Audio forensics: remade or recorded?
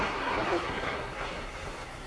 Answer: remade